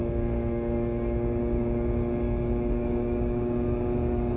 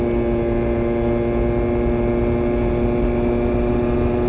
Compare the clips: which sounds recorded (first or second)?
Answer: second